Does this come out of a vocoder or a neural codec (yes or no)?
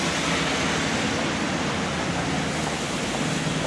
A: no